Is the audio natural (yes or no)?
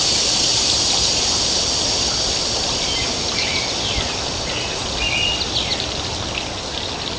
yes